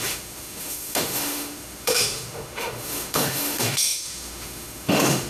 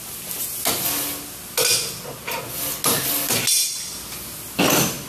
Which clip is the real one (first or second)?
second